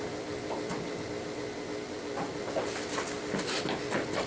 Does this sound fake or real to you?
real